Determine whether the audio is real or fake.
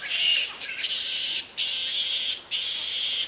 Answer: real